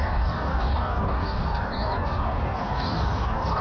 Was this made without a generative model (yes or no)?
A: no